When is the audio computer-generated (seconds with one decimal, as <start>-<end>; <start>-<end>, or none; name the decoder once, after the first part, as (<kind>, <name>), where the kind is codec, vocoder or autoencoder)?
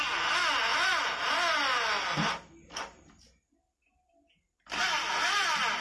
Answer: none